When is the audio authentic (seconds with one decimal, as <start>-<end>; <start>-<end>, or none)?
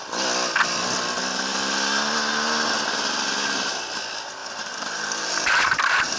0.0-4.4